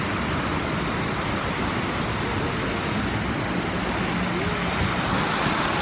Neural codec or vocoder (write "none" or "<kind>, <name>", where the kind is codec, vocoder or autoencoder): none